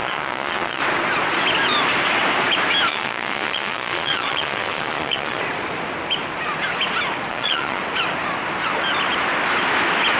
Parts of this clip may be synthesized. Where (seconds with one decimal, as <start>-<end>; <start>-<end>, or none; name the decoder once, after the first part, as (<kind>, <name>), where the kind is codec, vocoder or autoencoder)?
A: 0.0-0.8 (vocoder, Vocos); 2.9-5.4; 7.3-7.8